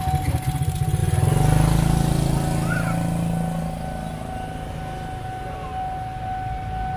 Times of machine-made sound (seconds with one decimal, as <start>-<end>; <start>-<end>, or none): none